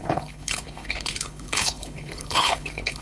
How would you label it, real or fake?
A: fake